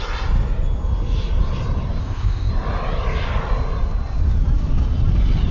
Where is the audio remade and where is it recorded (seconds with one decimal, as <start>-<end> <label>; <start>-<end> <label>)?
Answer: 0.0-2.0 recorded; 2.0-2.5 remade; 2.5-5.5 recorded